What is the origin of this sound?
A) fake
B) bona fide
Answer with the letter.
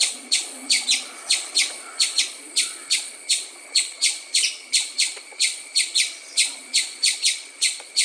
A